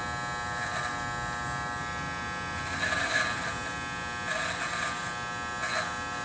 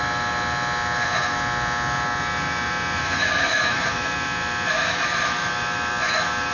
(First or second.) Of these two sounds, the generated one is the second